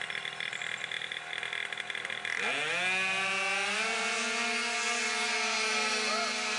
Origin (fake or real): real